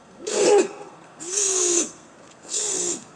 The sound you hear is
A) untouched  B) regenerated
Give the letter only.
B